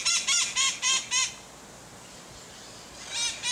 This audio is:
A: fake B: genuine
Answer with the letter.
B